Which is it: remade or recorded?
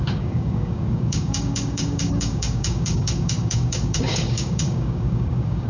remade